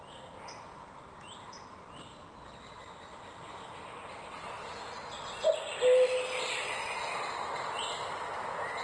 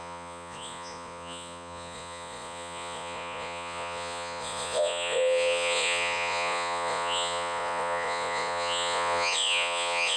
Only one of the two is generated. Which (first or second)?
second